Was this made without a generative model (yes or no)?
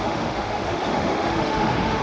no